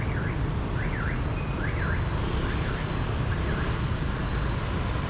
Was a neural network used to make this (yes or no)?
no